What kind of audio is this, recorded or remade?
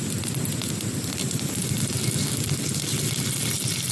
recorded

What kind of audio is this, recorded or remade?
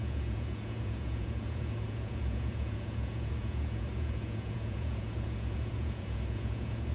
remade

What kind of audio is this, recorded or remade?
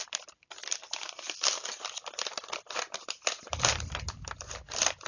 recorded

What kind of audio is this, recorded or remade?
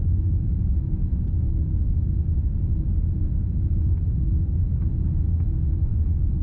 remade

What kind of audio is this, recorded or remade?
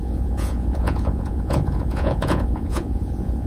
remade